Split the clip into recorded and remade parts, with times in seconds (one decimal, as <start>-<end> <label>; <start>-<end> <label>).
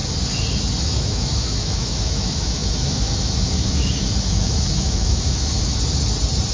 0.0-0.8 recorded; 0.8-5.7 remade; 5.7-6.5 recorded